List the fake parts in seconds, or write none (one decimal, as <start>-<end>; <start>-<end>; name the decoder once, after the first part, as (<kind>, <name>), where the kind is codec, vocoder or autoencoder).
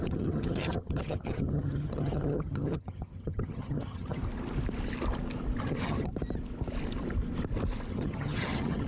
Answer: 0.0-4.2 (vocoder, HiFi-GAN); 5.6-6.1; 7.9-8.9